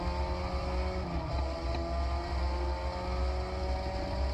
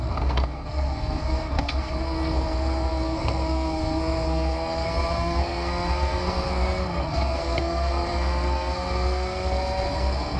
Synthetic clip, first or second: second